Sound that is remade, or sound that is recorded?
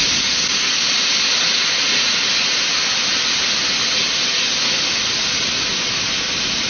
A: recorded